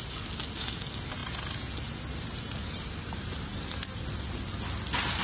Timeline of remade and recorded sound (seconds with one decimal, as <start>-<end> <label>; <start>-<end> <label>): 0.0-5.2 recorded